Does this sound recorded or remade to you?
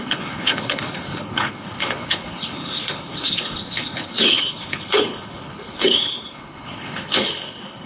remade